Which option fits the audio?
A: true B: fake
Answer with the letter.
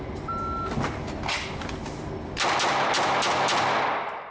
A